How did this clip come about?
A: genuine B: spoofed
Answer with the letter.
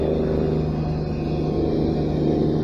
A